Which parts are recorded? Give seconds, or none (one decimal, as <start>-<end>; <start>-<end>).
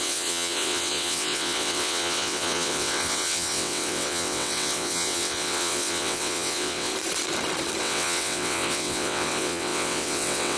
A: 6.9-7.8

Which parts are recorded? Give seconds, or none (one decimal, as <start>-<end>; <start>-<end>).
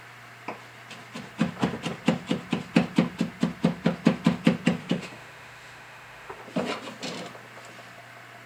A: 0.0-4.8; 6.4-8.5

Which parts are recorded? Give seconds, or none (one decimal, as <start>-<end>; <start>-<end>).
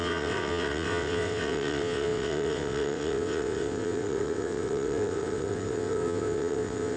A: none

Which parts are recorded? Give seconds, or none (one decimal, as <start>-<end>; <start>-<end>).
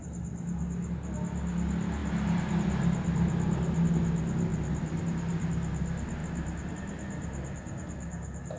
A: 0.0-8.6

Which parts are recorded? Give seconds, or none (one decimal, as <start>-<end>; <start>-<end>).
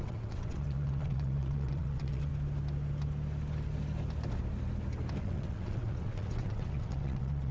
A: 2.3-5.2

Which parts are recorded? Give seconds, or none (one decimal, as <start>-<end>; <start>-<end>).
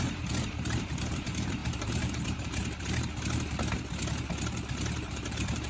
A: 2.6-5.1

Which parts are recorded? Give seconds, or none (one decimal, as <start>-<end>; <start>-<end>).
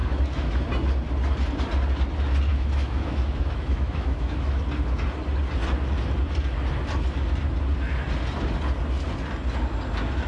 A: 0.6-2.5; 4.6-10.3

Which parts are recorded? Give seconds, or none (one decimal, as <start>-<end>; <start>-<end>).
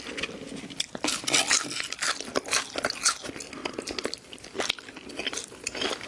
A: 0.0-6.1